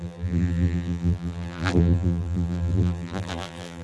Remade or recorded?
remade